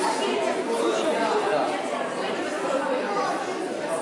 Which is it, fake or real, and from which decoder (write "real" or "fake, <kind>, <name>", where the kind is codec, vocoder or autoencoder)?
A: real